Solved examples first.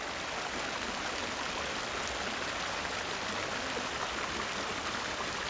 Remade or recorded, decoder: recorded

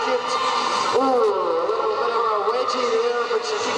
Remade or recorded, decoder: recorded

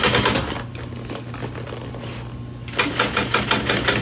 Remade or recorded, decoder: recorded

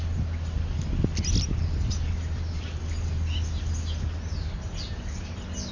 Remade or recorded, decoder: recorded